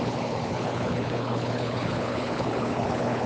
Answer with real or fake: fake